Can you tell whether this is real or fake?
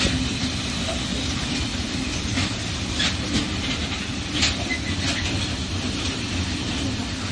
real